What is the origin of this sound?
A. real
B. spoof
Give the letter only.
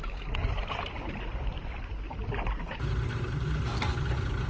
A